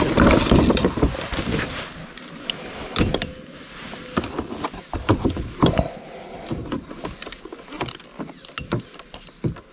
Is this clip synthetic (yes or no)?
no